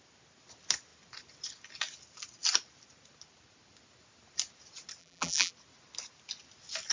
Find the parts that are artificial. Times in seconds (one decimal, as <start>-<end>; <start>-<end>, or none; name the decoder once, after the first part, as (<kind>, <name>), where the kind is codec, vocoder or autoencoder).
5.0-5.5 (vocoder, BigVGAN v2)